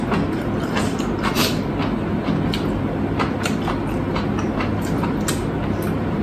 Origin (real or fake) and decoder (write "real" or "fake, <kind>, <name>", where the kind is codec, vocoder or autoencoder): real